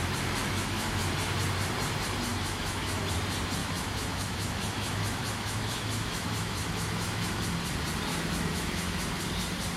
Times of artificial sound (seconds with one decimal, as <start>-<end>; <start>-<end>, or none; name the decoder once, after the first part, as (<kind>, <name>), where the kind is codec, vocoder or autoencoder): 0.4-1.1 (autoencoder, DAC-VAE); 2.3-3.0; 3.6-7.4; 8.1-9.2